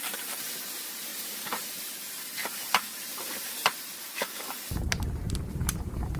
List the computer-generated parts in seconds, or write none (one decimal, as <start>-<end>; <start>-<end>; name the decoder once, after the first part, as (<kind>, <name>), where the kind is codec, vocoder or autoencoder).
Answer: 0.0-6.2 (vocoder, BigVGAN v2)